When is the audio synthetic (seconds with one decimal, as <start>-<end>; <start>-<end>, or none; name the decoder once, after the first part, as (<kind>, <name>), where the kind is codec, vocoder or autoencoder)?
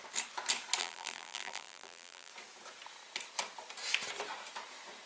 0.8-2.3 (vocoder, BigVGAN v2)